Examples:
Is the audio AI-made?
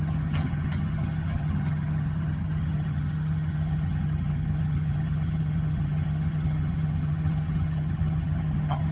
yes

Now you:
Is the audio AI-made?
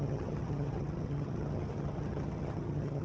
yes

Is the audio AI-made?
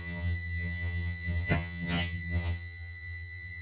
yes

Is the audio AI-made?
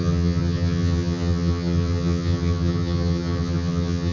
yes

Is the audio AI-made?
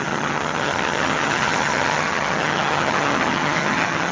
yes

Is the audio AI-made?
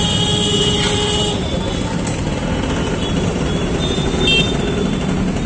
no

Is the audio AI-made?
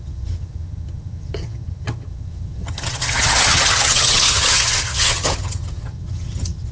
yes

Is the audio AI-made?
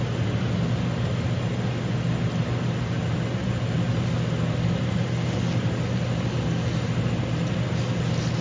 no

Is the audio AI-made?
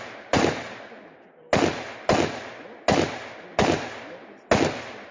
no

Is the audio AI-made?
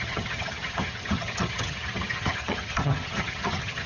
yes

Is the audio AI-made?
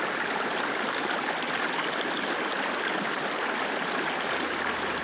no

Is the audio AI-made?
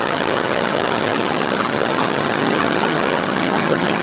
yes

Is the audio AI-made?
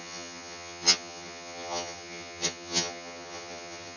yes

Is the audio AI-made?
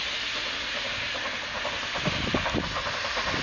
no